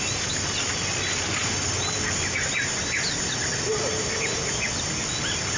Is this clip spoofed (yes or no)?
no